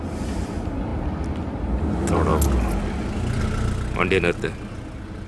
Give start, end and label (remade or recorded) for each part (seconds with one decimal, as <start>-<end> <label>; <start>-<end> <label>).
0.0-5.3 recorded